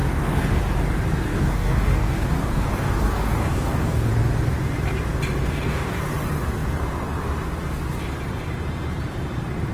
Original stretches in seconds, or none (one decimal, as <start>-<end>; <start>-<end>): 0.5-1.3; 4.1-5.4; 6.0-9.7